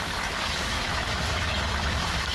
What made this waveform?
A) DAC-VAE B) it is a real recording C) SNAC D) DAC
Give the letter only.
A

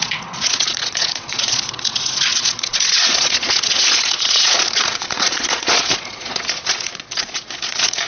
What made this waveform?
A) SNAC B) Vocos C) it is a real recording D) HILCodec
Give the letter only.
B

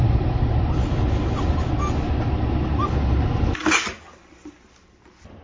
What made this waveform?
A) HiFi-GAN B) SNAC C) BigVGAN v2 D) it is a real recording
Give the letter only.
D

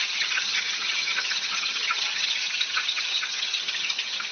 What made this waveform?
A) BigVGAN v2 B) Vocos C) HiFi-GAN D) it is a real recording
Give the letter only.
C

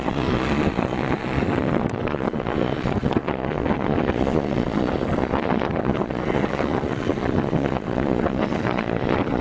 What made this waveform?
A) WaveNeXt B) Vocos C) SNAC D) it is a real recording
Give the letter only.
B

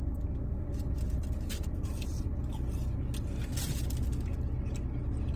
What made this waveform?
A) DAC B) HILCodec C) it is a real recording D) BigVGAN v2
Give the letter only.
C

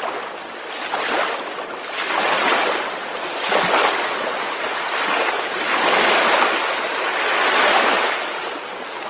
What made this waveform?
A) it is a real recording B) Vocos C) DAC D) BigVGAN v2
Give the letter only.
A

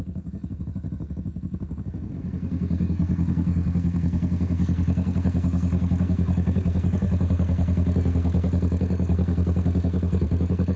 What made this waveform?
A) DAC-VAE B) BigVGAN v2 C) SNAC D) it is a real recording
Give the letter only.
C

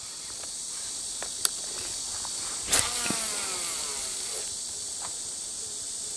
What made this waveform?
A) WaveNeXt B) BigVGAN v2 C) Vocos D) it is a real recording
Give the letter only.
D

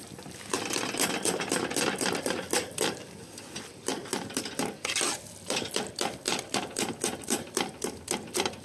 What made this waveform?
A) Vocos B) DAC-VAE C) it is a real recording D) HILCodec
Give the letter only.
C